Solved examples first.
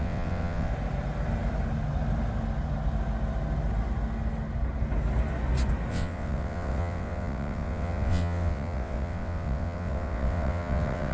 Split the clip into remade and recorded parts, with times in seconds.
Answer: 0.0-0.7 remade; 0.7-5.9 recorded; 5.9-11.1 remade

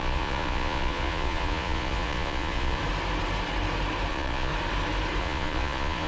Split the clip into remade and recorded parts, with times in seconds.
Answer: 0.0-2.8 remade; 2.8-4.1 recorded; 4.1-4.5 remade; 4.5-5.2 recorded; 5.2-6.1 remade

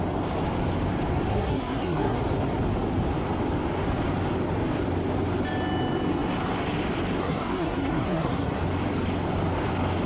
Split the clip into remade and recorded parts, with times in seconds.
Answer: 0.0-1.3 recorded; 1.3-2.2 remade; 2.2-7.2 recorded; 7.2-8.6 remade; 8.6-10.1 recorded

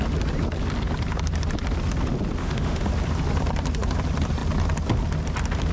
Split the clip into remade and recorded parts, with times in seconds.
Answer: 0.0-2.4 recorded; 2.4-2.9 remade; 2.9-5.7 recorded

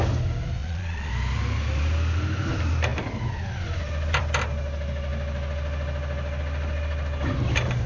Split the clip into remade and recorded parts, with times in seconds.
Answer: 0.0-0.6 recorded; 0.6-1.1 remade; 1.1-7.9 recorded

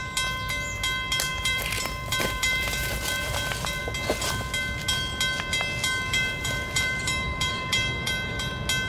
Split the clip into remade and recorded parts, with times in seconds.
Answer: 0.0-1.3 recorded; 1.3-3.8 remade; 3.8-6.1 recorded; 6.1-8.5 remade; 8.5-8.9 recorded